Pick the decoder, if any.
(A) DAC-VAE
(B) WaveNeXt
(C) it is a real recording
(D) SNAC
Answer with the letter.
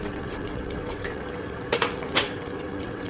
B